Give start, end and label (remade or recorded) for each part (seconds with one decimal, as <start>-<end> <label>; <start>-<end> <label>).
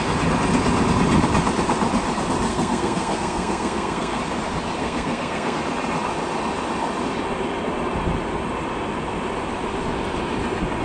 0.0-2.5 recorded; 2.5-4.2 remade; 4.2-4.8 recorded; 4.8-5.6 remade; 5.6-10.8 recorded